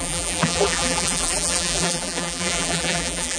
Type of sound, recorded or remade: remade